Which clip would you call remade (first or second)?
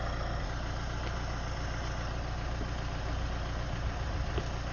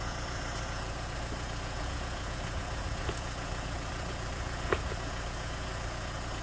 second